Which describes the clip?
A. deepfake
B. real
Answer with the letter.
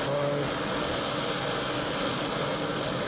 B